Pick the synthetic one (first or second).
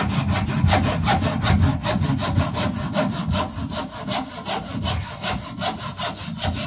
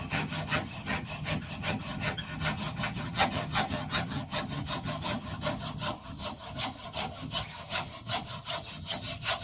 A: second